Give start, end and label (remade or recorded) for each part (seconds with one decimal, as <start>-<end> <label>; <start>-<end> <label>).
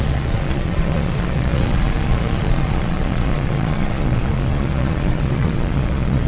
0.0-6.3 remade